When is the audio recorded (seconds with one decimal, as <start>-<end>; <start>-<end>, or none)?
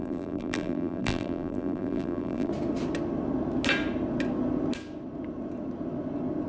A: 2.5-6.5